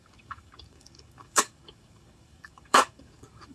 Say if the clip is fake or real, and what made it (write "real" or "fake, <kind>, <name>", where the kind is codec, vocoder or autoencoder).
fake, codec, DAC